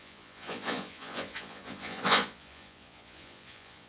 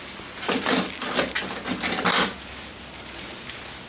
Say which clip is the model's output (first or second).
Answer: first